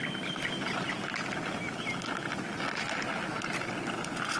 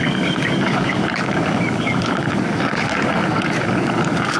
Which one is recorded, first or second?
first